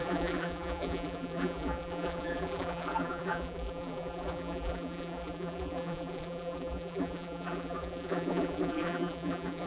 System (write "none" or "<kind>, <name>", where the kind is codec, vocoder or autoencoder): vocoder, BigVGAN v2